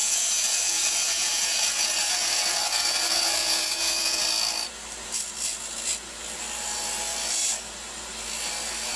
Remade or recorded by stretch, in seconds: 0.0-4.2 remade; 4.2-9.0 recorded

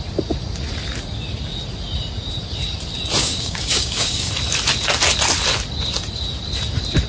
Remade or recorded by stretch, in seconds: 0.0-3.2 recorded; 3.2-4.3 remade; 4.3-7.1 recorded

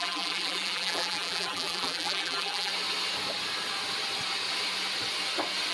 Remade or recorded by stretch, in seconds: 0.0-2.7 remade; 2.7-5.7 recorded

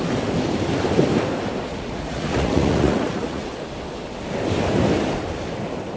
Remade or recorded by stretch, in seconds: 0.0-1.7 recorded; 1.7-3.5 remade; 3.5-6.0 recorded

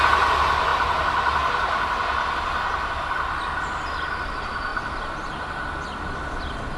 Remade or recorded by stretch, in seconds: 0.0-6.8 recorded

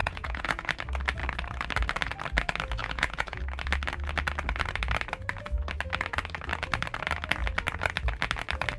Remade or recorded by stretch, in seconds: 0.0-0.7 remade; 0.7-2.8 recorded; 2.8-3.4 remade; 3.4-8.8 recorded